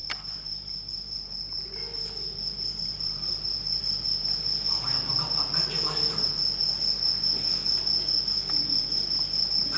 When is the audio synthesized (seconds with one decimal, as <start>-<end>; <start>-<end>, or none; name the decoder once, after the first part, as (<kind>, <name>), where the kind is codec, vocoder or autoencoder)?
none